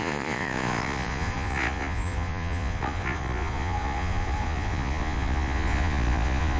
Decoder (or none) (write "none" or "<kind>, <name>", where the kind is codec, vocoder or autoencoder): vocoder, Vocos